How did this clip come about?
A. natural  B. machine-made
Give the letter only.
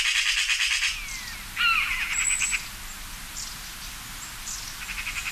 A